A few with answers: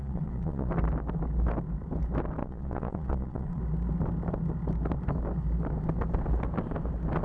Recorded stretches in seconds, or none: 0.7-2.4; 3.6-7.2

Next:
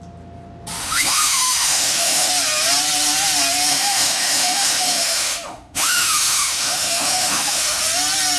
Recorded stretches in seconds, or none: 0.0-0.8; 2.3-3.7; 7.8-8.4

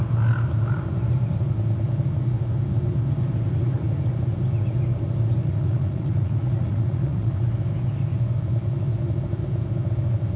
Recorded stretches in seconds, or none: 0.0-5.4; 7.3-10.4

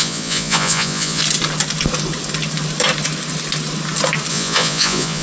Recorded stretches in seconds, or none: 1.2-4.3

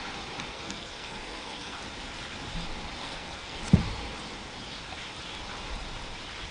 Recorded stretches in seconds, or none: 0.0-0.5; 1.8-3.0; 3.6-6.5

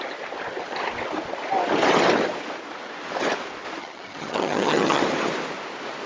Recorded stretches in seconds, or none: 0.0-3.8; 5.0-6.1

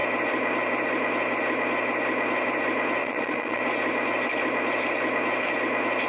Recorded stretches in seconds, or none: 0.0-3.0; 3.6-6.1

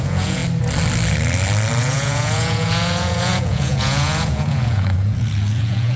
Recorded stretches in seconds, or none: 0.4-1.8